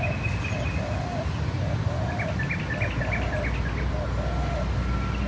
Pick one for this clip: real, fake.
real